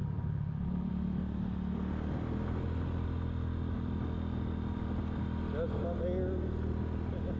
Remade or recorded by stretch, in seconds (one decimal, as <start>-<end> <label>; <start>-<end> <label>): 0.0-0.9 remade; 0.9-7.4 recorded